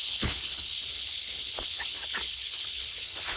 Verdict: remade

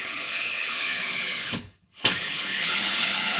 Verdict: remade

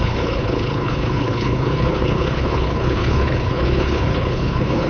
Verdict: remade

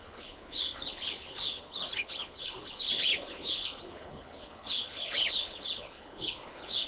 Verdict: remade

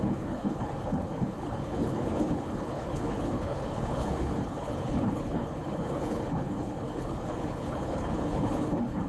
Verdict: remade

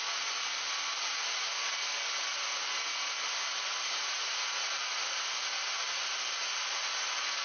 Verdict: recorded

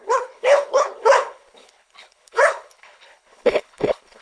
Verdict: remade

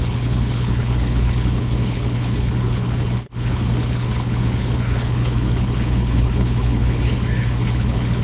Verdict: remade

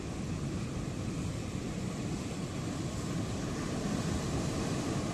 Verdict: recorded